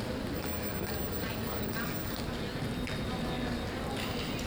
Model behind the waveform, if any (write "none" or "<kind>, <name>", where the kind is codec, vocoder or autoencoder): none